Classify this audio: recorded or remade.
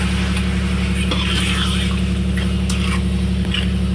recorded